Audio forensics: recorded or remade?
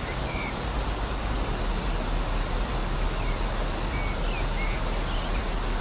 recorded